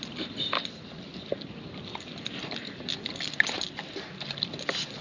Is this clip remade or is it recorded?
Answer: recorded